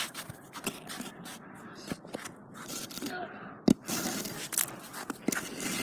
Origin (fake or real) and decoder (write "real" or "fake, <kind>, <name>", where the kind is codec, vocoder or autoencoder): real